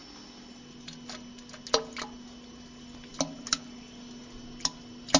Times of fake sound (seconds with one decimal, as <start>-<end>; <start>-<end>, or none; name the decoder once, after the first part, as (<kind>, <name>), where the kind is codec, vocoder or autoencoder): none